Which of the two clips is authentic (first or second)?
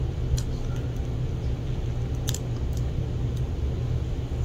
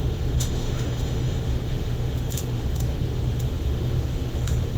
first